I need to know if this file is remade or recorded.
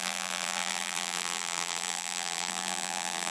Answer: remade